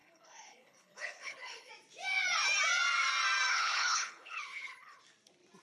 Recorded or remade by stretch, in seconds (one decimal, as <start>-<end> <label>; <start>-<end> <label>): 0.0-1.7 remade; 1.7-3.5 recorded; 3.5-5.0 remade; 5.0-5.6 recorded